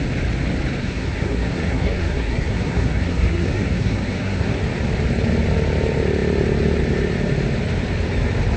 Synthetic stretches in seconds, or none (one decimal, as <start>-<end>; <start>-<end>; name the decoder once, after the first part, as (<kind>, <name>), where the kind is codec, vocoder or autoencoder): 0.8-4.6 (codec, SNAC)